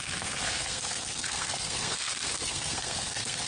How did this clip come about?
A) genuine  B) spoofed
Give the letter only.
B